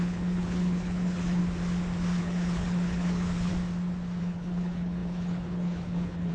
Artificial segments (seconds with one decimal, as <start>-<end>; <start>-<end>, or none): 0.0-1.4; 2.2-3.5; 4.2-6.3